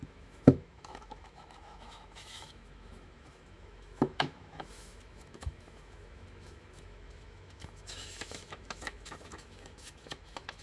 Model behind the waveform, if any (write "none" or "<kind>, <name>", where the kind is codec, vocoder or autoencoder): autoencoder, DAC-VAE